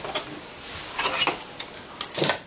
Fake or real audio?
real